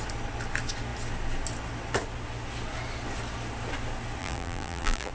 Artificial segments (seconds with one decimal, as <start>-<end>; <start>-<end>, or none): 4.2-5.1